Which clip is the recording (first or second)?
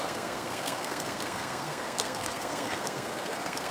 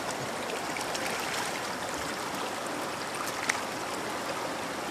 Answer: second